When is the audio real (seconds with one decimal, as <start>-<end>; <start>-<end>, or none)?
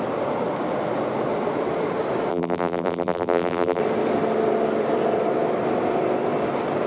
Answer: 0.0-2.3; 3.8-6.9